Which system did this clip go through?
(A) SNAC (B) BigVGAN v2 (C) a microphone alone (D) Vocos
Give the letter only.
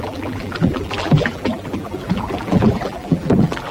B